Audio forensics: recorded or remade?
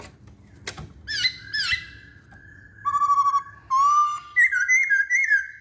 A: recorded